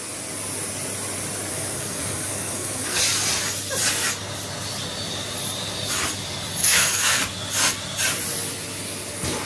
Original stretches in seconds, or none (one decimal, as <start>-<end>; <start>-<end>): 0.0-1.5; 3.0-6.6; 7.2-9.5